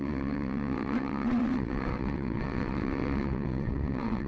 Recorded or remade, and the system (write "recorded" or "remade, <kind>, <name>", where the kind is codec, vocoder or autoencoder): remade, vocoder, WaveNeXt